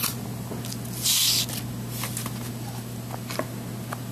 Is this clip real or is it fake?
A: real